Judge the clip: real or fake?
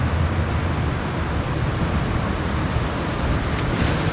fake